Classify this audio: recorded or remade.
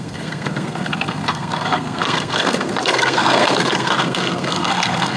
remade